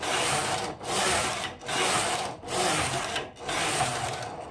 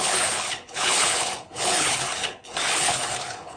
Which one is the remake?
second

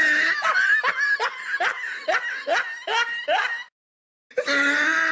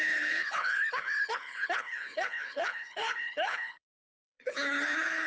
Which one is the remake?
second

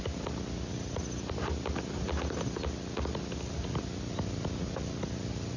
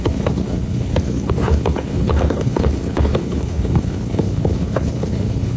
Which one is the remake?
second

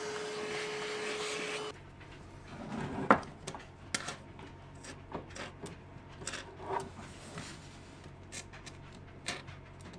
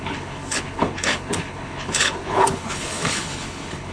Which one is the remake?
second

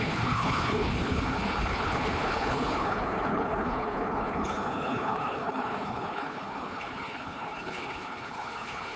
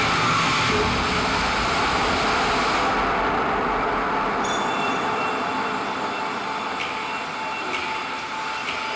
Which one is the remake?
first